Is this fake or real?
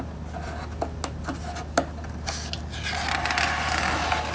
real